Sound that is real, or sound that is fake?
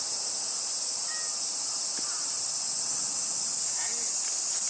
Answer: real